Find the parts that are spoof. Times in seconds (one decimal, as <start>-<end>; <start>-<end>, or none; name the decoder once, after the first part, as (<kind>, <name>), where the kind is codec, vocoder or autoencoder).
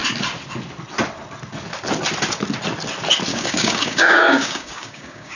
3.3-5.4 (codec, DAC)